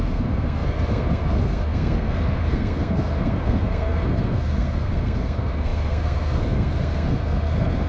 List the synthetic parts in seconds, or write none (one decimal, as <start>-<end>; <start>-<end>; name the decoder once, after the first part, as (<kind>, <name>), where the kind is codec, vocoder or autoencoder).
0.0-7.9 (codec, SNAC)